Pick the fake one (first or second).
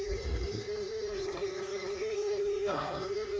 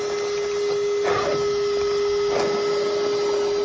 first